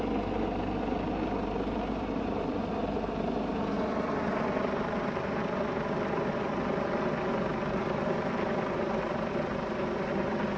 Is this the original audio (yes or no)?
yes